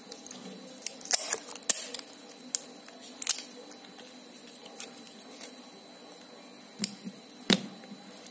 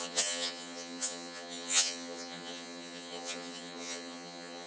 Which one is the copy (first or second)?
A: second